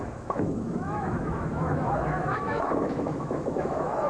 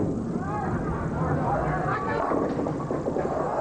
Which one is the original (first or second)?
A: second